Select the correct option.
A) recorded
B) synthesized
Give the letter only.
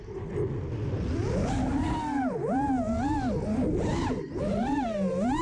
A